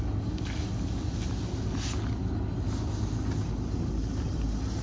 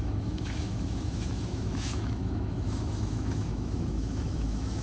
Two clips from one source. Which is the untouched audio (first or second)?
first